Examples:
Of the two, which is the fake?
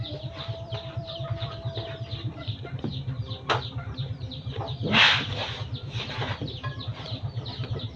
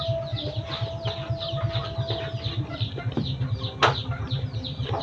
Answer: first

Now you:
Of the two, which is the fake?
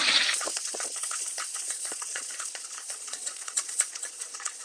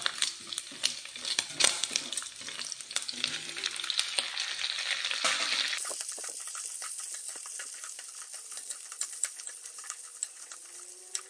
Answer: first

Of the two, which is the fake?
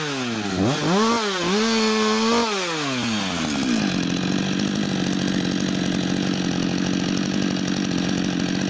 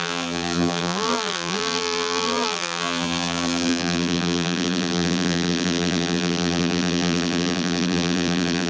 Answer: second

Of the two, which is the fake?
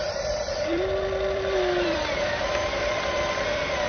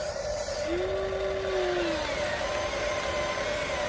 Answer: first